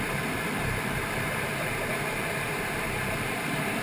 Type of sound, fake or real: fake